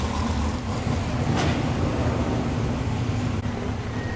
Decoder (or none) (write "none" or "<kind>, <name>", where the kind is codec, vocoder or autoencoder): none